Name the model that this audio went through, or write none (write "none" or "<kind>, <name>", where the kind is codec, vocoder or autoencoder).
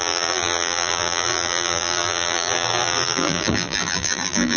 vocoder, BigVGAN v2